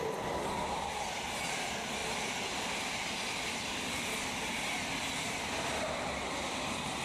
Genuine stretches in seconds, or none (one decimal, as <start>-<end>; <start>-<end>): 0.0-7.0